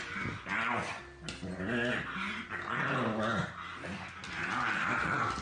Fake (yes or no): no